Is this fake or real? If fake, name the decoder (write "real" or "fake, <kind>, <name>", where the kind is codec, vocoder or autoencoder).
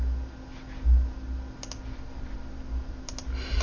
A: real